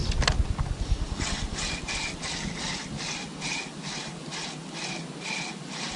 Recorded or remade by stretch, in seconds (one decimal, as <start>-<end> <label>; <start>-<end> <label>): 0.0-6.0 recorded